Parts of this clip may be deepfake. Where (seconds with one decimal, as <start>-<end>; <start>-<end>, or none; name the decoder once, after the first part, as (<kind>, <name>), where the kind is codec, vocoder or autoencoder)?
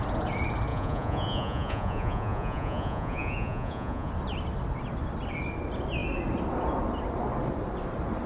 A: 0.7-4.1 (vocoder, Vocos)